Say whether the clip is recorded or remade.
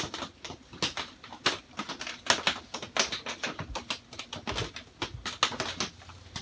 recorded